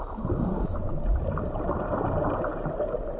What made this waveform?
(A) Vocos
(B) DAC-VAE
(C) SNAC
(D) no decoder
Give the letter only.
D